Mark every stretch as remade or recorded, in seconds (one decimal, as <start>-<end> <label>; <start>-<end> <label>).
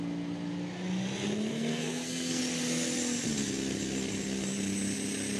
0.0-1.5 recorded; 1.5-2.4 remade; 2.4-5.4 recorded